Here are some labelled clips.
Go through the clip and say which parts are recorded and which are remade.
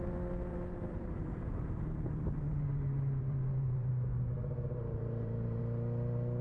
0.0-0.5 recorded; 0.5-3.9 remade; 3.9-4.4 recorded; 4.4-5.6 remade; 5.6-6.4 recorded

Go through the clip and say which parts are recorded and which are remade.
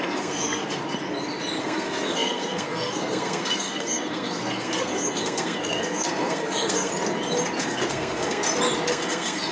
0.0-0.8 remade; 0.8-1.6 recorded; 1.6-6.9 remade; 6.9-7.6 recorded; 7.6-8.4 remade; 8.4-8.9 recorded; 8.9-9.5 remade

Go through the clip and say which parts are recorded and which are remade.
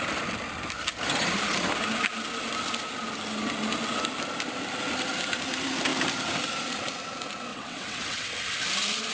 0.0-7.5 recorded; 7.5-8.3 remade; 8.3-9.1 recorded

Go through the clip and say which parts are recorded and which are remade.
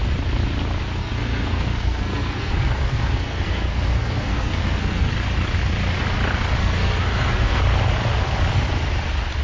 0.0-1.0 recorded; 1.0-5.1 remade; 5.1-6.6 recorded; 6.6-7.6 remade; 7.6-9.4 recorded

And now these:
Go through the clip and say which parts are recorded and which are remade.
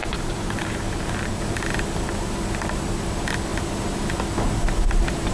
0.0-1.4 remade; 1.4-5.3 recorded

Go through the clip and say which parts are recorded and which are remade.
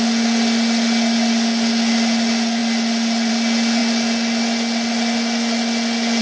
0.0-6.2 recorded